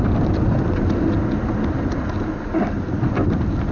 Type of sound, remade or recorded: recorded